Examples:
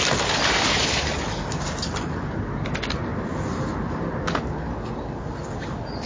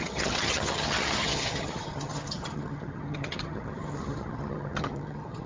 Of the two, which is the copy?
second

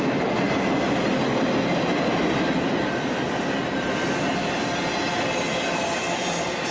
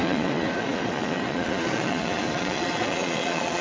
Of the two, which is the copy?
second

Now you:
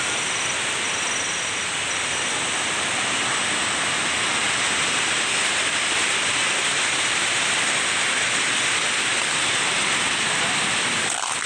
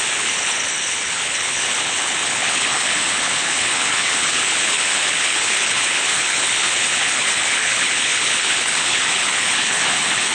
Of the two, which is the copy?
second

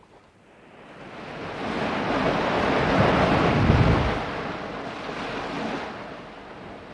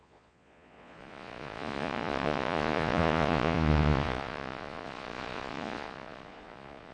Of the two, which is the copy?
second